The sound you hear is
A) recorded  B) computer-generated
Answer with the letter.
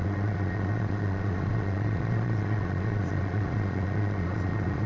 B